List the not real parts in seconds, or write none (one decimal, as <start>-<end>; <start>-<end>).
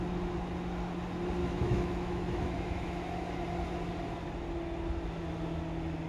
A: 1.4-3.1